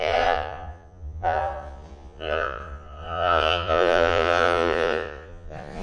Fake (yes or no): yes